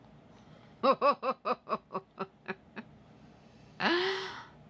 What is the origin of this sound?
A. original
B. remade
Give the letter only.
A